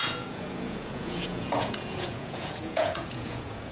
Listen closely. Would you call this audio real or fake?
fake